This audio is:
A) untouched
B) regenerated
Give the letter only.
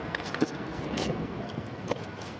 B